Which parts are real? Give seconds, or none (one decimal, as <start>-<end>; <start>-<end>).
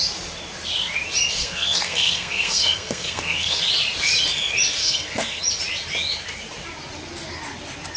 0.0-1.4; 3.6-4.8; 5.4-8.0